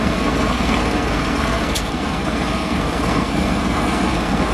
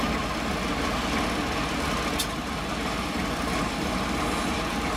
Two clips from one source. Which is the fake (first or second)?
first